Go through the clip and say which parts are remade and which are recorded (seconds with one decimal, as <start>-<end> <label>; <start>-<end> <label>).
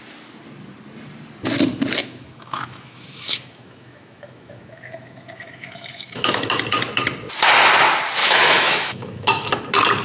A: 0.0-2.0 recorded; 2.0-6.6 remade; 6.6-8.2 recorded; 8.2-9.5 remade; 9.5-10.0 recorded